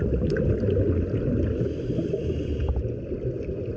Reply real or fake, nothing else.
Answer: real